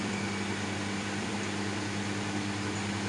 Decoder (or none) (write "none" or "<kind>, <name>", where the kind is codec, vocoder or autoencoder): vocoder, BigVGAN v2